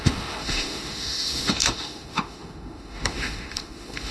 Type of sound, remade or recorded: remade